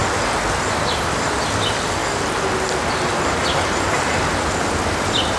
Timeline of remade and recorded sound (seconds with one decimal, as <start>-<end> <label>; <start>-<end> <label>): 0.0-0.8 recorded; 0.8-2.0 remade; 2.0-5.4 recorded